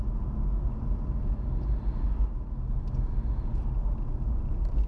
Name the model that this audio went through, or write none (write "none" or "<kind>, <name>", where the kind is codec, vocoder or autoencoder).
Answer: none